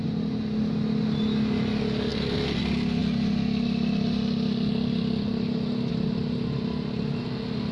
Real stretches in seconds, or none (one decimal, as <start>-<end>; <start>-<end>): 0.0-7.7